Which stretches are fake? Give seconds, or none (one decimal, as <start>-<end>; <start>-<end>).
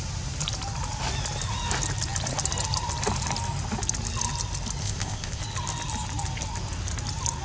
4.8-5.4